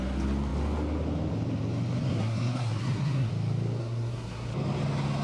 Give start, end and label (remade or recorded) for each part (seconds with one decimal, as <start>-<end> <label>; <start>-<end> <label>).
0.0-2.0 recorded; 2.0-3.3 remade; 3.3-3.8 recorded; 3.8-4.5 remade; 4.5-5.2 recorded